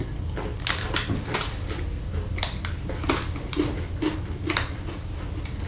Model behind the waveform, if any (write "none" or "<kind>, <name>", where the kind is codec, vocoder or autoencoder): none